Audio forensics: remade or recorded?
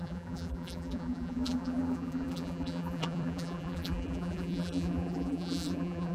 remade